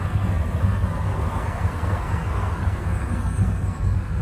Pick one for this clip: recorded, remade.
remade